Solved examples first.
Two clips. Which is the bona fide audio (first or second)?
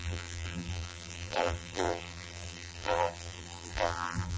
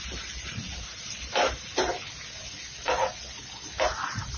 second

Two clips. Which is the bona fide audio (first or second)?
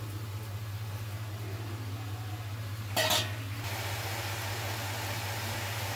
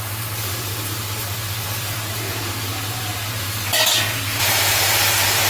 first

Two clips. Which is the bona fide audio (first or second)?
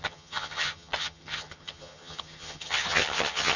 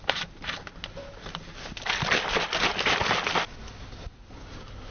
second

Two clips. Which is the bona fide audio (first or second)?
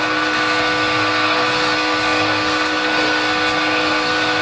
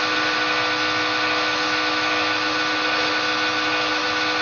second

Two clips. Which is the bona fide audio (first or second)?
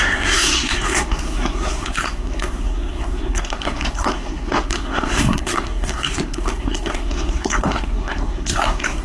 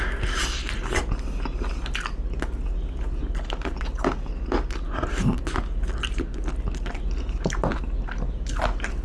second